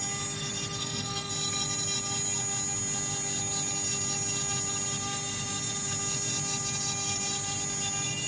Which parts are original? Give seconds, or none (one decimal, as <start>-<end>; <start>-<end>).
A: 0.0-0.8; 1.3-8.3